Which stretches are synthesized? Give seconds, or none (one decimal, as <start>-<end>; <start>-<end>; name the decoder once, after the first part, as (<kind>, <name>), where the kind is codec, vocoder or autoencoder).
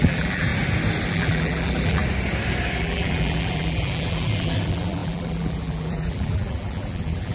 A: 0.0-0.5 (vocoder, BigVGAN v2); 1.1-2.0; 2.8-7.3